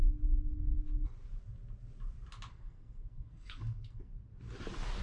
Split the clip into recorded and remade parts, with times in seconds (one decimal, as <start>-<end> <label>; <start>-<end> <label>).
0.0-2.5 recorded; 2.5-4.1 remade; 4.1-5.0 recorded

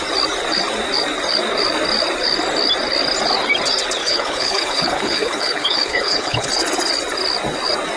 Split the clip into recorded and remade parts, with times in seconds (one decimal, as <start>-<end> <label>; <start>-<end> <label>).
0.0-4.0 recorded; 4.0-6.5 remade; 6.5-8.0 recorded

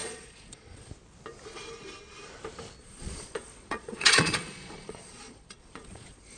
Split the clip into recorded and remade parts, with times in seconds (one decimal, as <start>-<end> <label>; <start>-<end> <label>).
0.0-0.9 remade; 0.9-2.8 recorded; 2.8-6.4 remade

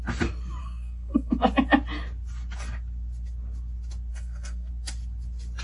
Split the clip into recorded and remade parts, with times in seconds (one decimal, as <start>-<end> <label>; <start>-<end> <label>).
0.0-0.6 recorded; 0.6-1.3 remade; 1.3-4.1 recorded; 4.1-4.7 remade; 4.7-5.6 recorded

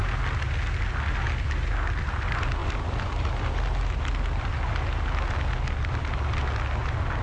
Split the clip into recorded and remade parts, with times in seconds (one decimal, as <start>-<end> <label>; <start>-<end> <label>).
0.0-2.6 recorded; 2.6-4.0 remade; 4.0-7.2 recorded

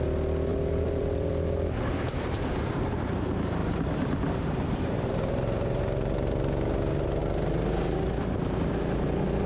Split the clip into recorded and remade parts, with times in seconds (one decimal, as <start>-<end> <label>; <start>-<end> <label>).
0.0-0.5 recorded; 0.5-3.0 remade; 3.0-3.6 recorded; 3.6-5.3 remade; 5.3-9.5 recorded